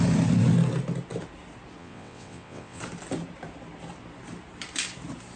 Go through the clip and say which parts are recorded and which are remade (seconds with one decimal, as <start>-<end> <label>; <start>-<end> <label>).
0.0-1.8 recorded; 1.8-2.8 remade; 2.8-5.4 recorded